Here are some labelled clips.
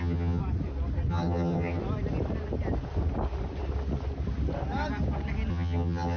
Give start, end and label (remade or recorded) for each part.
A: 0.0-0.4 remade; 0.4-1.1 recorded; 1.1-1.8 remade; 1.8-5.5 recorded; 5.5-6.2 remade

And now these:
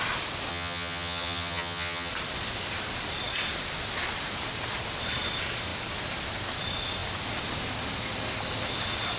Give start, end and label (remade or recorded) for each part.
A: 0.0-0.5 recorded; 0.5-2.1 remade; 2.1-9.2 recorded

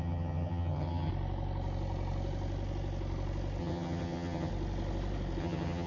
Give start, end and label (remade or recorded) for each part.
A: 0.0-1.1 remade; 1.1-3.6 recorded; 3.6-4.5 remade; 4.5-5.4 recorded; 5.4-5.9 remade

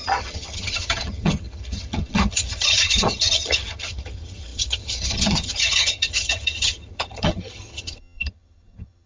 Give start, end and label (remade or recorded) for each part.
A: 0.0-9.1 remade

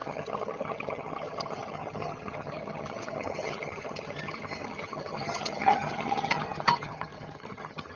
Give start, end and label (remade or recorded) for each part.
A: 0.0-8.0 remade

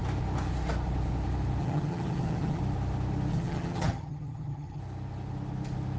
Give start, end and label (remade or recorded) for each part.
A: 0.0-1.6 recorded; 1.6-2.6 remade; 2.6-3.3 recorded; 3.3-4.8 remade; 4.8-6.0 recorded